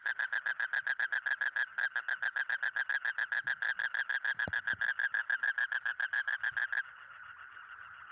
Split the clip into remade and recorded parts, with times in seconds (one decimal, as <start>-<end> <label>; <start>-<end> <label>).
0.0-8.1 recorded

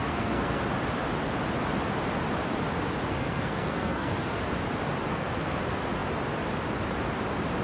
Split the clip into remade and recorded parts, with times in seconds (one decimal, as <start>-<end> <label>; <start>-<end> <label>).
0.0-0.6 remade; 0.6-3.1 recorded; 3.1-4.4 remade; 4.4-5.1 recorded; 5.1-5.6 remade; 5.6-7.6 recorded